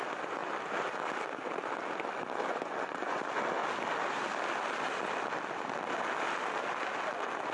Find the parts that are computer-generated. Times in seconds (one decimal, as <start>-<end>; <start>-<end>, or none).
2.5-3.2